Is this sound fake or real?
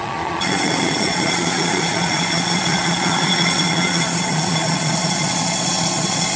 fake